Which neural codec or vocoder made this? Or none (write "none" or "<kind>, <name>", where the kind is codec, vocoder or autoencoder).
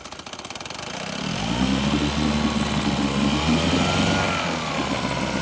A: none